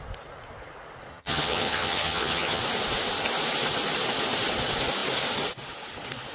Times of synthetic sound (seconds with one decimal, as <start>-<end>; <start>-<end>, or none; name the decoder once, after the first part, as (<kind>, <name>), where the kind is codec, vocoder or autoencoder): 1.1-2.6 (vocoder, HiFi-GAN)